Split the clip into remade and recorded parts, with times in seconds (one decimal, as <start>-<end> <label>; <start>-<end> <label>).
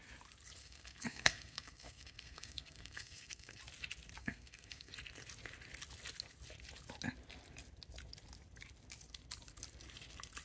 0.0-0.6 recorded; 0.6-3.6 remade; 3.6-4.2 recorded; 4.2-4.9 remade; 4.9-10.4 recorded